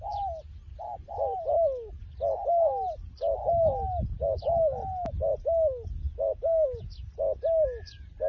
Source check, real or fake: real